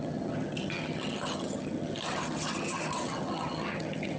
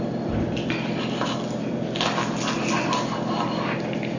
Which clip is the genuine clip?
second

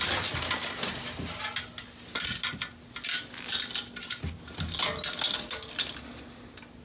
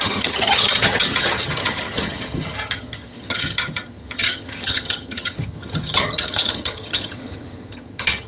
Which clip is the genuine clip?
first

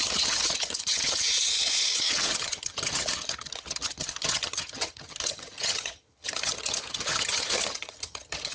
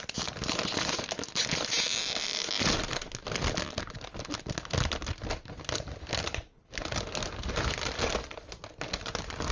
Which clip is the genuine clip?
second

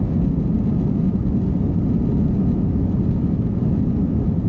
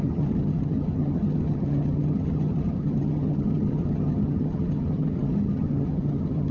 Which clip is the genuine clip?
first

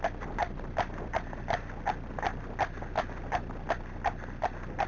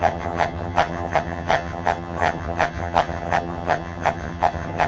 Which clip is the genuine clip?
first